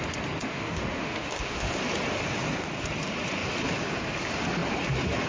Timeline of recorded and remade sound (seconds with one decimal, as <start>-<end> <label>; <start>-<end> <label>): 0.0-0.4 recorded; 0.4-1.8 remade; 1.8-5.3 recorded